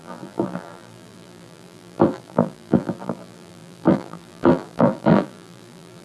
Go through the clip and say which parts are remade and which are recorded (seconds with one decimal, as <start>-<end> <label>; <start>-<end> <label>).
0.0-6.0 remade